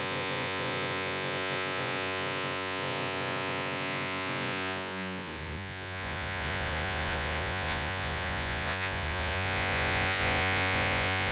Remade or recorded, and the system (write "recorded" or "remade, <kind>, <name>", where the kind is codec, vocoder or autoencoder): remade, vocoder, Vocos